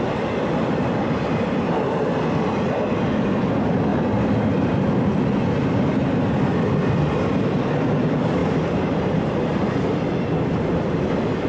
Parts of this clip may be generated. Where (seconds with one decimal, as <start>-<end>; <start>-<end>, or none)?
none